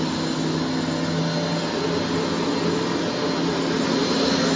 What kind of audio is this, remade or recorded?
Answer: recorded